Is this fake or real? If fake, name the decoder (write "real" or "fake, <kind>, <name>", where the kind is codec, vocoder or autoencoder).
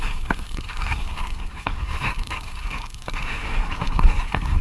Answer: fake, codec, SNAC